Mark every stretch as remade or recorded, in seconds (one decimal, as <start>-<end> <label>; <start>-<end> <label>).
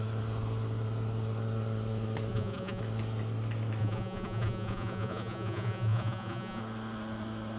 0.0-2.3 recorded; 2.3-2.8 remade; 2.8-3.8 recorded; 3.8-6.6 remade; 6.6-7.6 recorded